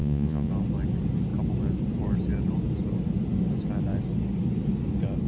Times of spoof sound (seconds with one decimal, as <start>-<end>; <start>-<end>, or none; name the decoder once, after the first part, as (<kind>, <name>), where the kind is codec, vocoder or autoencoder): 0.0-0.5 (vocoder, Vocos)